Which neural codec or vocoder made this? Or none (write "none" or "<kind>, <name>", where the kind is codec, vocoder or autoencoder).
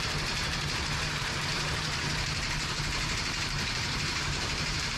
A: vocoder, BigVGAN v2